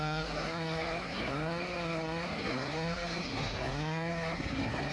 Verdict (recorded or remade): remade